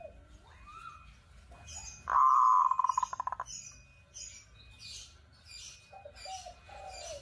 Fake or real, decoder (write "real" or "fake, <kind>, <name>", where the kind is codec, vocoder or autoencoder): real